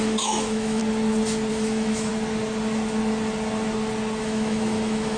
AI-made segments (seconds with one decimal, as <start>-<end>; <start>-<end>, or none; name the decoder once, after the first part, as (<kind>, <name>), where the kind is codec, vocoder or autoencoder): 0.0-0.8 (autoencoder, DAC-VAE); 1.5-2.1; 4.2-5.2